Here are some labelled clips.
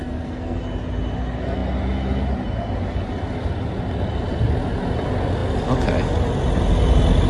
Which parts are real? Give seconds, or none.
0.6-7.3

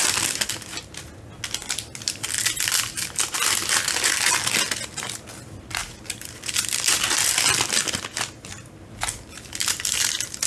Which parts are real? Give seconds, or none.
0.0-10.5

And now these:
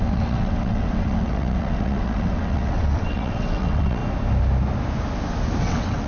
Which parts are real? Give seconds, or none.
4.0-5.6

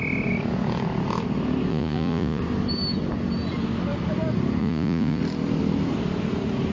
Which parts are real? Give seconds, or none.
0.0-1.7; 2.4-4.6; 5.2-6.7